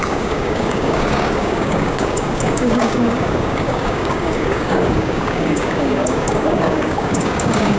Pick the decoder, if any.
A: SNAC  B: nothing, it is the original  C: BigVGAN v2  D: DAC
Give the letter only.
D